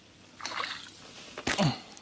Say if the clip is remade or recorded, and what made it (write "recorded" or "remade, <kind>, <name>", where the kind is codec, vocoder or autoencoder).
remade, vocoder, BigVGAN v2